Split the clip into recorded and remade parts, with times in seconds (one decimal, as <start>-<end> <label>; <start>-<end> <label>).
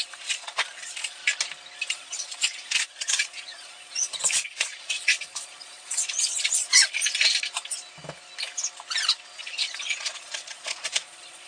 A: 0.0-1.2 remade; 1.2-1.9 recorded; 1.9-7.0 remade; 7.0-9.4 recorded; 9.4-11.5 remade